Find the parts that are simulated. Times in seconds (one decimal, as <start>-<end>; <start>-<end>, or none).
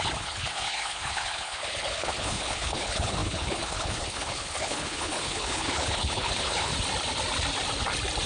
0.0-6.7